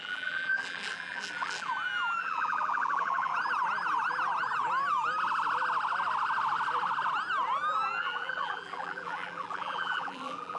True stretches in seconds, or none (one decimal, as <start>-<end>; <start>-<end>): 1.7-2.2; 3.3-8.0